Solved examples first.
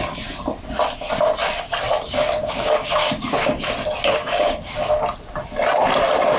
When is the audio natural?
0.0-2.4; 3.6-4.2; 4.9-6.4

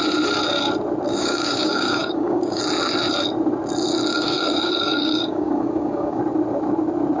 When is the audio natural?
0.0-1.1; 2.6-4.1; 6.2-7.2

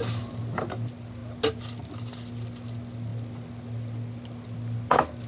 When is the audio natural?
0.0-5.3

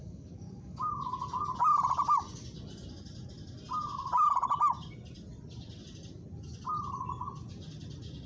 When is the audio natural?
0.9-8.3

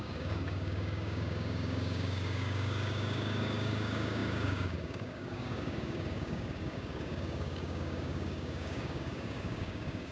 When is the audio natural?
none

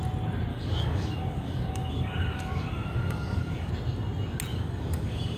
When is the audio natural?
0.0-0.5; 3.7-4.5

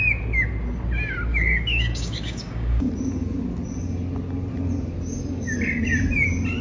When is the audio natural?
0.0-1.3; 2.9-6.6

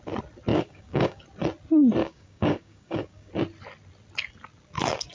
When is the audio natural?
0.0-0.5; 1.2-2.0; 3.3-5.1